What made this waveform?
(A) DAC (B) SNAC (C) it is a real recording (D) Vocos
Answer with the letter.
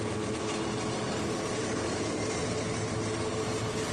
C